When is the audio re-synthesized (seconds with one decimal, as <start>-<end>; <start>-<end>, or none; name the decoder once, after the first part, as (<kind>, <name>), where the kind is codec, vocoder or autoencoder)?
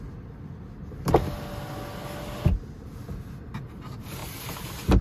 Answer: none